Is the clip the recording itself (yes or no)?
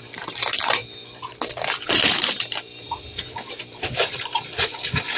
no